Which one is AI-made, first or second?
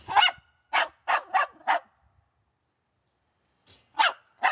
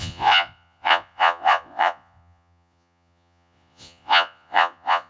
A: second